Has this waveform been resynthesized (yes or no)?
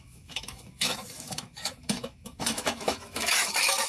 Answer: yes